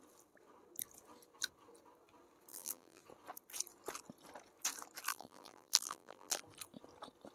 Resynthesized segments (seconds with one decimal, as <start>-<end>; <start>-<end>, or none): 2.5-3.0; 5.1-6.4